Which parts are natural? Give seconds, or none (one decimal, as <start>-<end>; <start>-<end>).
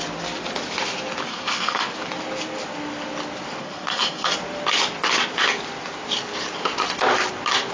0.0-1.3; 1.8-3.6; 4.3-7.7